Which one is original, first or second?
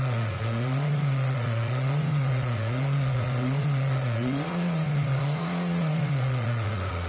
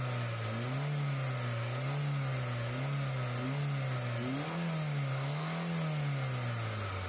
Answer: second